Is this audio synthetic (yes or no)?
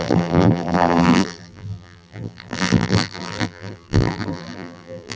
yes